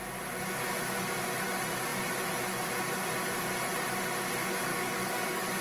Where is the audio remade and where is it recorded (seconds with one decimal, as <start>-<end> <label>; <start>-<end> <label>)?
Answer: 0.0-4.7 recorded; 4.7-5.6 remade